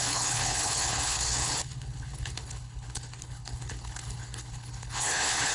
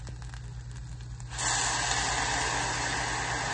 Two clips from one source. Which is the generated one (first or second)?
first